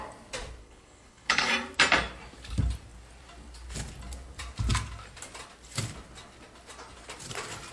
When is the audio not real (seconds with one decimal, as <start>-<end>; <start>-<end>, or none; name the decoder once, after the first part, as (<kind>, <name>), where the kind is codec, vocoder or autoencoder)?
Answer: 0.6-1.5 (codec, HILCodec)